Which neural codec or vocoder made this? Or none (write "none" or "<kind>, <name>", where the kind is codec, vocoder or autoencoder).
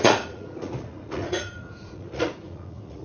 vocoder, Vocos